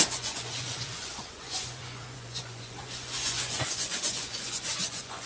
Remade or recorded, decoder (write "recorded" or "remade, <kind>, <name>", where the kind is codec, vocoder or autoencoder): remade, vocoder, Vocos